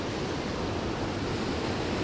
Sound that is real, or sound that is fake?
real